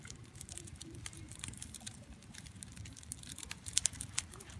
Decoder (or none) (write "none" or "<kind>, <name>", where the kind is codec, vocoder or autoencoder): vocoder, BigVGAN v2